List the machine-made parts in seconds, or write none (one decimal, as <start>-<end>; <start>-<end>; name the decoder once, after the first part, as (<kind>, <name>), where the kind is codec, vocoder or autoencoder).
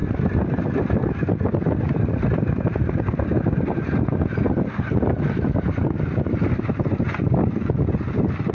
none